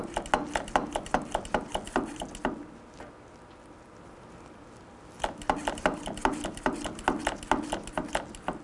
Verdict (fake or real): real